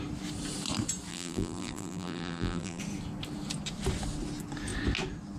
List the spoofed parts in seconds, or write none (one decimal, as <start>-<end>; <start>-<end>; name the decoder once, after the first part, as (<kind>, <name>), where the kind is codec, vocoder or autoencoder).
1.1-2.8 (vocoder, BigVGAN v2)